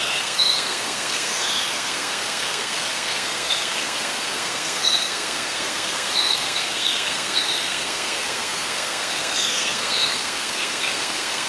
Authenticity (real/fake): fake